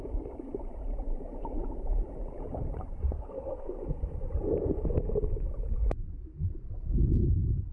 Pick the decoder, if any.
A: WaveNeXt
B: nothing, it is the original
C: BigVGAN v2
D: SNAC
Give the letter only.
C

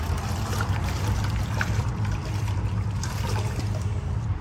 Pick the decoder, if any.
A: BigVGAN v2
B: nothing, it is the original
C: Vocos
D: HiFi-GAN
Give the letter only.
A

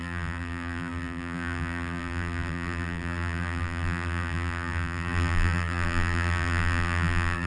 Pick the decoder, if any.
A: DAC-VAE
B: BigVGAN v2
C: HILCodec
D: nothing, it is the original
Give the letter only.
B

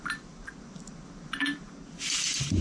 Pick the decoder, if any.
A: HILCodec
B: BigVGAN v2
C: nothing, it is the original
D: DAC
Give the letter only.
C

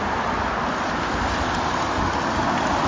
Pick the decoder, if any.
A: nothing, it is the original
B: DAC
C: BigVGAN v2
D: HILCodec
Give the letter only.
A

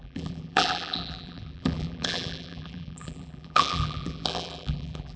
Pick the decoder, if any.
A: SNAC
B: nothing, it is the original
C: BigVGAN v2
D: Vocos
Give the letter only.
C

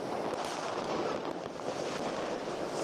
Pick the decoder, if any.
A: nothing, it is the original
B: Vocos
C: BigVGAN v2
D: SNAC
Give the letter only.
A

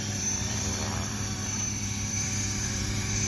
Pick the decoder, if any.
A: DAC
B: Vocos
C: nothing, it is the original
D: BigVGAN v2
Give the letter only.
D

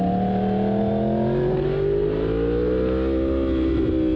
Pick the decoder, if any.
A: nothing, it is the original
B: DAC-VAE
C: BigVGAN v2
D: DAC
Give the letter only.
A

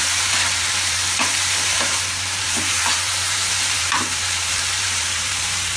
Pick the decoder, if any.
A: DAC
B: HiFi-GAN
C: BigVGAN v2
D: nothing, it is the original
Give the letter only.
C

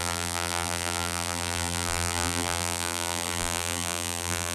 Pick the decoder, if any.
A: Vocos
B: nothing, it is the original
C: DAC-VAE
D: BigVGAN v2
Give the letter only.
D